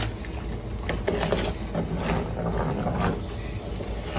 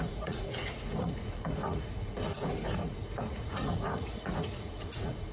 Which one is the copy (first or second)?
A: second